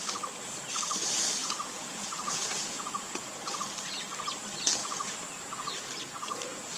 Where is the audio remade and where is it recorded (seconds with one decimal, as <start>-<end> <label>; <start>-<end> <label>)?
0.0-1.4 recorded; 1.4-3.6 remade; 3.6-4.8 recorded; 4.8-5.7 remade; 5.7-6.8 recorded